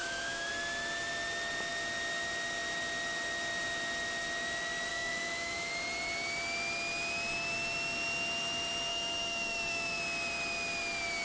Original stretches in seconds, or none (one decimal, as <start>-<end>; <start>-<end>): 0.5-4.9; 5.7-8.9; 10.0-11.2